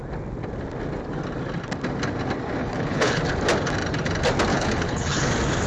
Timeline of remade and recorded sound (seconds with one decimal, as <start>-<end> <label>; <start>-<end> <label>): 0.0-2.6 recorded; 2.6-3.2 remade; 3.2-4.5 recorded; 4.5-5.3 remade; 5.3-5.7 recorded